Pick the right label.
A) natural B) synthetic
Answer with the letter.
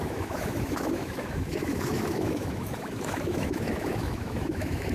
B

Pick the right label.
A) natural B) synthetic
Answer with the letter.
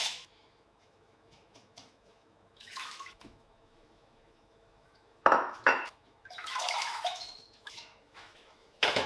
B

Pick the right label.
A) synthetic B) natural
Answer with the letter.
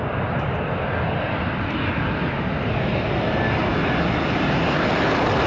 B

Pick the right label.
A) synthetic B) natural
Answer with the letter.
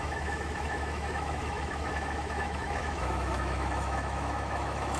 A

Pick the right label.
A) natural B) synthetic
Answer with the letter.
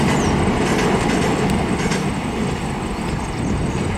A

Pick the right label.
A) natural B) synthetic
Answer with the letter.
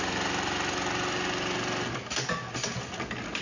A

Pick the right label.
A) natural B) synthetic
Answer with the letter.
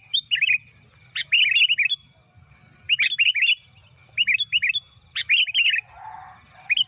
A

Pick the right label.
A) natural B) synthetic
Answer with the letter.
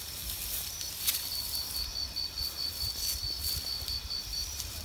A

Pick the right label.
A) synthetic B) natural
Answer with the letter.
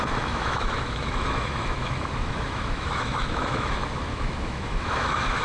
A